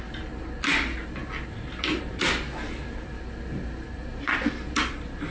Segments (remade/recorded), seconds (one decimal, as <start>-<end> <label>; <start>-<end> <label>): 0.0-5.3 recorded